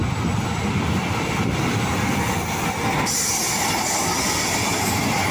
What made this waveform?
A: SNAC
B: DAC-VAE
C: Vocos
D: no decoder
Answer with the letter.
D